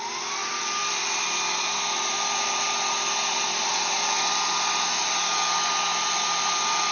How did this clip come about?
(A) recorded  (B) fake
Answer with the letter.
A